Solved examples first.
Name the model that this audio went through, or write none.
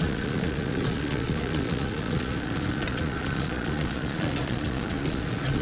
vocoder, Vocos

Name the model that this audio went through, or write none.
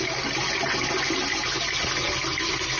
none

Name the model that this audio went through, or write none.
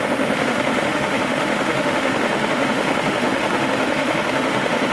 autoencoder, DAC-VAE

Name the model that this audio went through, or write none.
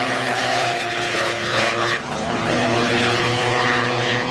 codec, HILCodec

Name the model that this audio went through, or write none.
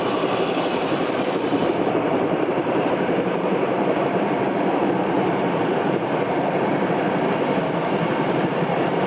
vocoder, BigVGAN v2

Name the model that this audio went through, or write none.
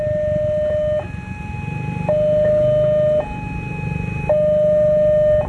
none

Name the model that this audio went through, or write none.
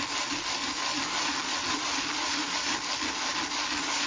none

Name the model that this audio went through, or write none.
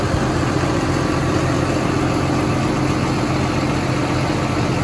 none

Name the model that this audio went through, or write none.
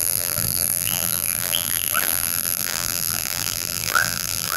vocoder, BigVGAN v2